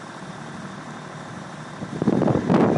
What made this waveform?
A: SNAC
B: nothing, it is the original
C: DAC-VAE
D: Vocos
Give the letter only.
B